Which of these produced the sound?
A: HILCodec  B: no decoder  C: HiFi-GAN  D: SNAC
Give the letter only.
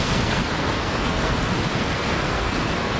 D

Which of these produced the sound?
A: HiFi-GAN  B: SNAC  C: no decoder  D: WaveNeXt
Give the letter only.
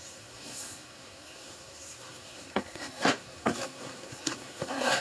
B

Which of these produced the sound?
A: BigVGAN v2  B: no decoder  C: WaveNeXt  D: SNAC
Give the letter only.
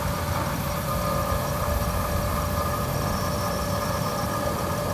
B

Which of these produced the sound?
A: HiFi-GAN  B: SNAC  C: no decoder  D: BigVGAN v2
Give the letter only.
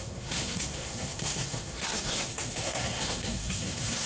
B